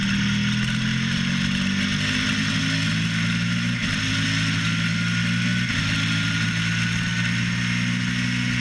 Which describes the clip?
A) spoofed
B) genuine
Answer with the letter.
B